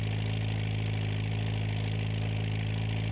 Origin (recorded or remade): recorded